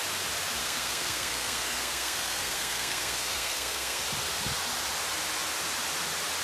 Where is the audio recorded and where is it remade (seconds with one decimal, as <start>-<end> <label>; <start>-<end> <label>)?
0.0-0.6 recorded; 0.6-4.0 remade; 4.0-6.4 recorded